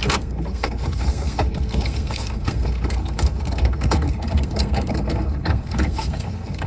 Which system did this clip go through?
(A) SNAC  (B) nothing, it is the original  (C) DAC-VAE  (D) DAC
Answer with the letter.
A